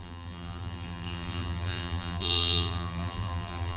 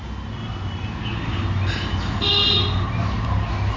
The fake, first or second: first